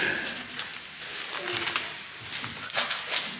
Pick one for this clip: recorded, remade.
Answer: recorded